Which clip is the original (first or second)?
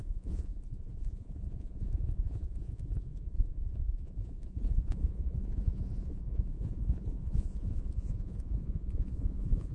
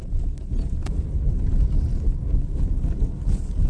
second